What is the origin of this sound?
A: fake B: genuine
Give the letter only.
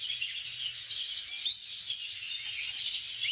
B